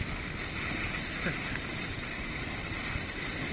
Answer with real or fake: real